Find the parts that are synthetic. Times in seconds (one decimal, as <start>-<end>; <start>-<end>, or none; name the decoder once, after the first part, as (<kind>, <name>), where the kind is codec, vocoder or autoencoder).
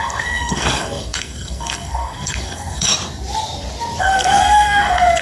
0.0-2.9 (codec, SNAC); 4.0-5.2